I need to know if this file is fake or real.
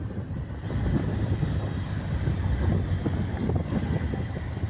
real